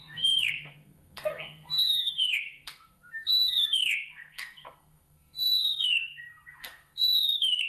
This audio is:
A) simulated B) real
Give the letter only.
A